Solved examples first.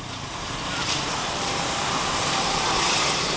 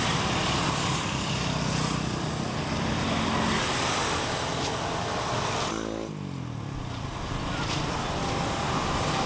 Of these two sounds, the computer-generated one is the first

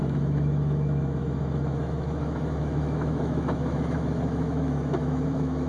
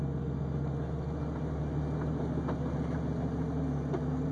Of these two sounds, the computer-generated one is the first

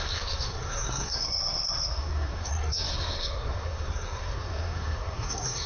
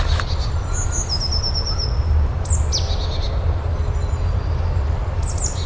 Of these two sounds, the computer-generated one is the first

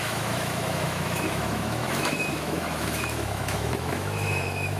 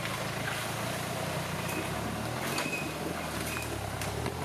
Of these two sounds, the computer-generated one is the first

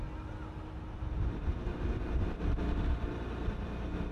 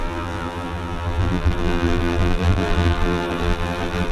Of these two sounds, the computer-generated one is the second